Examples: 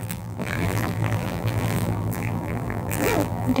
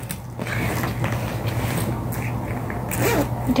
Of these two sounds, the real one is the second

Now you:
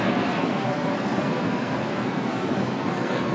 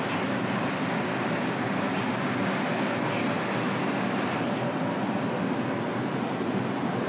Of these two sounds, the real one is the second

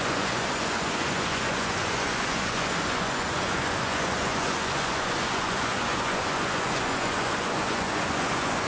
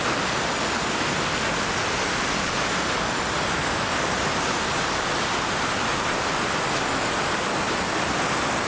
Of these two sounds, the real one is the second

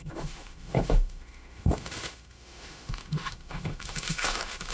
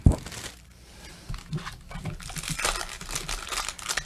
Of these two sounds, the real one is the second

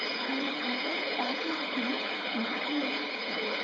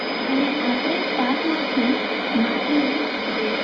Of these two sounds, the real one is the second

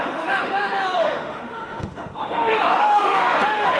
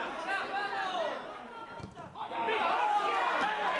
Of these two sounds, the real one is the second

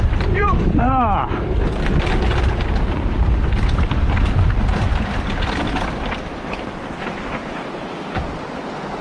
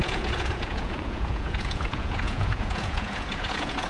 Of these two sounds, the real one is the first